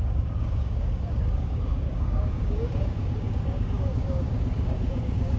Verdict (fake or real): fake